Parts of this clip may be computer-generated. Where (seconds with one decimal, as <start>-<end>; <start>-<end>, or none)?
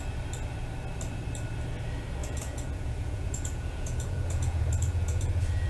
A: 2.2-5.7